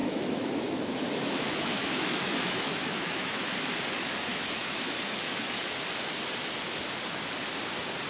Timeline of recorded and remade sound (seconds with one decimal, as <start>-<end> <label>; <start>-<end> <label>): 0.0-3.5 remade; 3.5-4.3 recorded; 4.3-5.6 remade; 5.6-8.1 recorded